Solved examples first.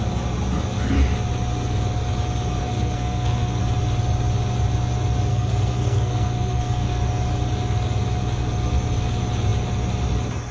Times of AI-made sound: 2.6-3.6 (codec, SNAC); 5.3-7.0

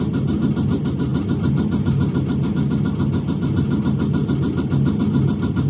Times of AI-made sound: none

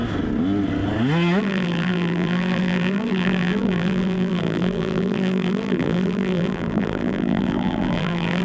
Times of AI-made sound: 1.4-8.4 (vocoder, BigVGAN v2)

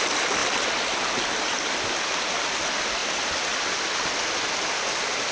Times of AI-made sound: none

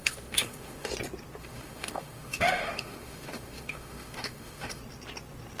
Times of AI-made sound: 0.0-0.9 (autoencoder, DAC-VAE); 1.4-4.8

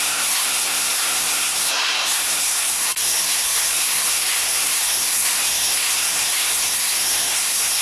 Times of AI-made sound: 0.0-7.8 (codec, SNAC)